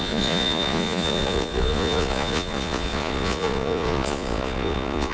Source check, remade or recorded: remade